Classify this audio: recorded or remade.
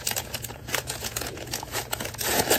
remade